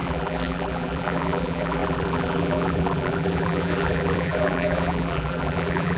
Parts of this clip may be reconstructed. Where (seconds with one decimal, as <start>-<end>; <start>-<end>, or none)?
0.0-6.0